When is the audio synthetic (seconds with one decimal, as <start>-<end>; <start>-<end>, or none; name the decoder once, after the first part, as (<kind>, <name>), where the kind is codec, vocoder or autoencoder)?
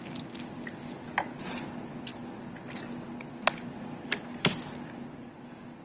none